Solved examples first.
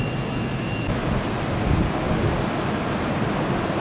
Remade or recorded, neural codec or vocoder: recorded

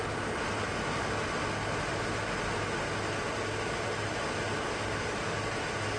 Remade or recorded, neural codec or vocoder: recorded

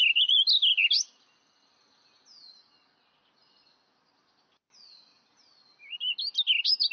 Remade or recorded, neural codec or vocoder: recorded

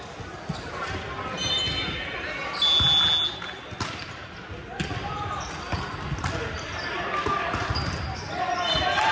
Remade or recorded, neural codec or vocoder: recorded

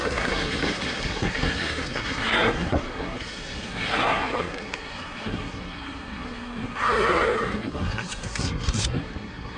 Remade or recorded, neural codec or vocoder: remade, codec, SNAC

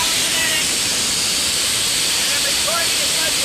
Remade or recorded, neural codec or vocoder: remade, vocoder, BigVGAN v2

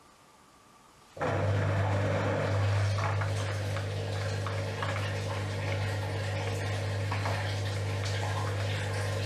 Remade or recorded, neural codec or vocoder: recorded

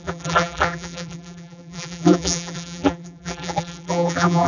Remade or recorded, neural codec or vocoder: remade, vocoder, BigVGAN v2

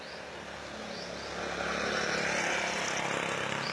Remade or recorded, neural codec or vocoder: recorded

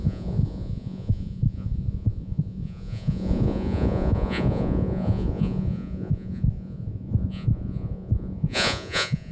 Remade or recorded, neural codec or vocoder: remade, vocoder, Vocos